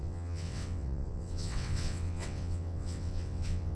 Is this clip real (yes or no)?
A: no